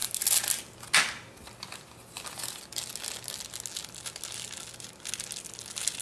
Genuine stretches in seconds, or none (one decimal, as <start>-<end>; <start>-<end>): 0.0-6.0